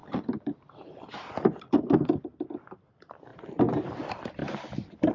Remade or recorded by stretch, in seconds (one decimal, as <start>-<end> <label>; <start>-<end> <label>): 0.0-2.2 remade; 2.2-3.3 recorded; 3.3-3.9 remade; 3.9-4.4 recorded; 4.4-5.1 remade